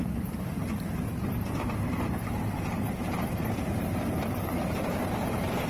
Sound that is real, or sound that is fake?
fake